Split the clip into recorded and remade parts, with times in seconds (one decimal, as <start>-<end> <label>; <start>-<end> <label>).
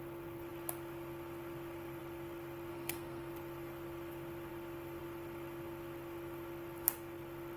0.0-2.7 recorded; 2.7-3.3 remade; 3.3-7.6 recorded